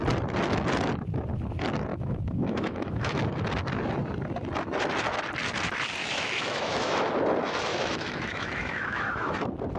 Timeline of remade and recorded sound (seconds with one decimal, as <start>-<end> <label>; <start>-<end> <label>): 0.0-1.9 recorded; 1.9-3.2 remade; 3.2-6.0 recorded; 6.0-7.1 remade; 7.1-7.7 recorded; 7.7-9.3 remade; 9.3-9.8 recorded